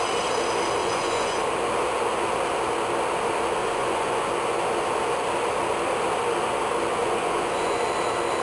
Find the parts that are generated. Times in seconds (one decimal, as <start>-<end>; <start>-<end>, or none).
0.8-1.4; 3.6-4.3; 7.0-7.8